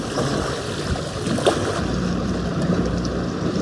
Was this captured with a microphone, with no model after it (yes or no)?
yes